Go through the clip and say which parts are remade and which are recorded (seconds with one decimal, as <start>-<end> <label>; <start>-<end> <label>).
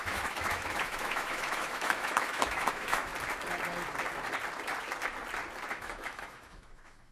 0.0-3.1 remade; 3.1-5.7 recorded; 5.7-7.1 remade